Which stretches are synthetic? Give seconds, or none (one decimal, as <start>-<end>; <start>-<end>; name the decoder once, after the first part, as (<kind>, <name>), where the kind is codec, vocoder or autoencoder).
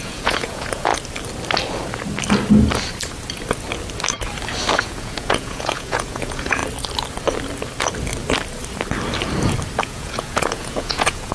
0.0-0.9 (vocoder, Vocos); 4.8-6.6; 9.8-11.3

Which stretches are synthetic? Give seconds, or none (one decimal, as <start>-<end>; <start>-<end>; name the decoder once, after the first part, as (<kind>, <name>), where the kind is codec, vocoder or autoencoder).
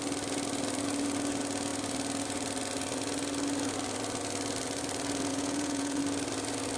5.3-6.0 (vocoder, Vocos)